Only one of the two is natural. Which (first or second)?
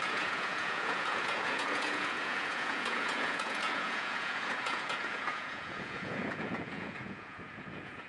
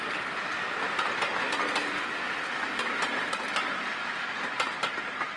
second